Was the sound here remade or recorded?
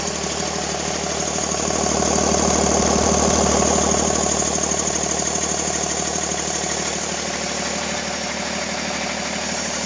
recorded